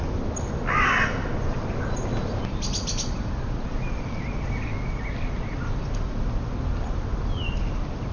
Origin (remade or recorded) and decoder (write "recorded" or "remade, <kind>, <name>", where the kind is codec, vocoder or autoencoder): recorded